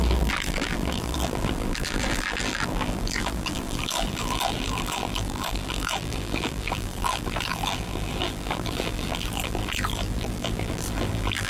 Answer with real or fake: fake